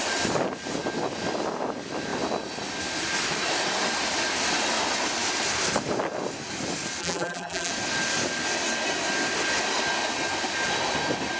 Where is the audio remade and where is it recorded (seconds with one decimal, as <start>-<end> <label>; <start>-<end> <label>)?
0.0-7.0 recorded; 7.0-7.7 remade; 7.7-11.4 recorded